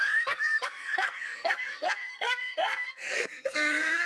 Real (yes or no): no